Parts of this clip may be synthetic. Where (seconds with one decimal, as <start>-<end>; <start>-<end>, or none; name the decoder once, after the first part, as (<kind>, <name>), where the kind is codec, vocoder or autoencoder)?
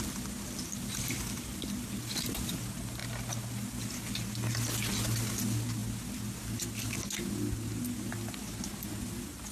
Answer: none